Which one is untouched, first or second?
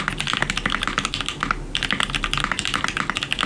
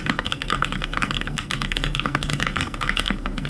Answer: first